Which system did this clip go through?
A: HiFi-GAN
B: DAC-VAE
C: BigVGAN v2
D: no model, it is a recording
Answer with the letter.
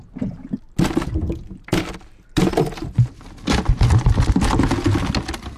D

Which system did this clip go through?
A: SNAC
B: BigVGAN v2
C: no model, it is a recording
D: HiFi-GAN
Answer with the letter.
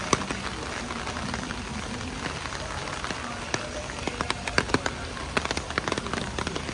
C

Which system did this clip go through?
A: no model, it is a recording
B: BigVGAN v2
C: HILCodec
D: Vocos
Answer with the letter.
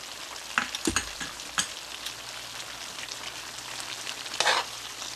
A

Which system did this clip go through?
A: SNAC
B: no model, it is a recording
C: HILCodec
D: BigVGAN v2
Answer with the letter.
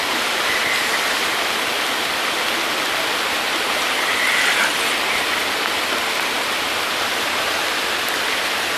B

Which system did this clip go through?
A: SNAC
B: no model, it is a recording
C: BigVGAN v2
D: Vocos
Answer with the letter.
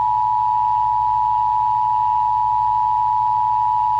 B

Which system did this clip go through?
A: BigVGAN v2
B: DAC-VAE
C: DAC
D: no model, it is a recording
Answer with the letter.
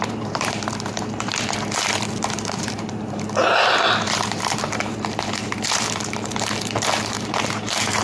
A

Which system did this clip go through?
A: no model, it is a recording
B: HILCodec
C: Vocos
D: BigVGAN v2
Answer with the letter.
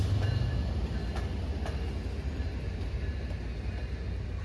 A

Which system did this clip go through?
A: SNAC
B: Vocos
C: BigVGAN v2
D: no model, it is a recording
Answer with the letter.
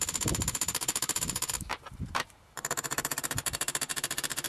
C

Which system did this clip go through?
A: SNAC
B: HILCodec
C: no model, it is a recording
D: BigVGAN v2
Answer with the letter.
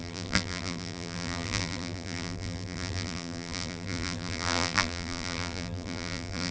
D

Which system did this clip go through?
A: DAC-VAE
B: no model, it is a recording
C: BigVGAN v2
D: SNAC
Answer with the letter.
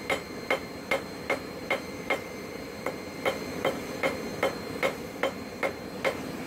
C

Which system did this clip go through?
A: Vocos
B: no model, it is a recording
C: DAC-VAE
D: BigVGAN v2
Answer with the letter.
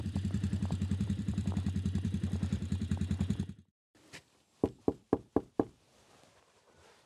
D